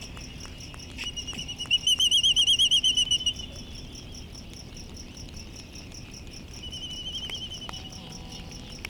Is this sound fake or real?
real